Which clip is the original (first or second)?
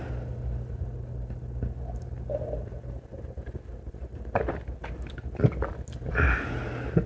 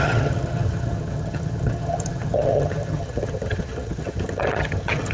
first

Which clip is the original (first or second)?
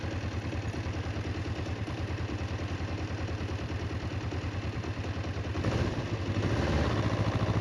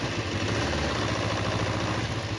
second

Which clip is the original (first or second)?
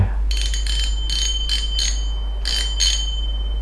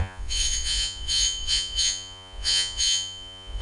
first